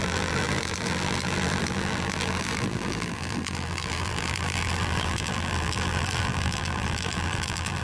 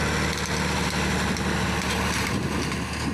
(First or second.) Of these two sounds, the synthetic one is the first